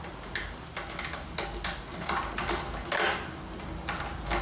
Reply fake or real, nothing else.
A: real